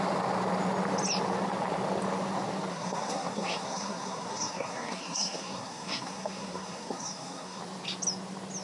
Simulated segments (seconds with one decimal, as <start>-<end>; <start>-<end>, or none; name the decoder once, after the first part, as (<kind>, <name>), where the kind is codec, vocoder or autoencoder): 2.7-7.6 (codec, SNAC)

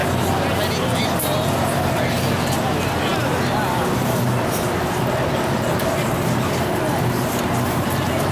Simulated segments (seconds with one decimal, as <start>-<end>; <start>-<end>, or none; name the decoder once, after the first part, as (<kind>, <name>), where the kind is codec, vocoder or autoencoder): none